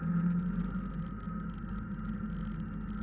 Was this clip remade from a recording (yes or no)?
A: no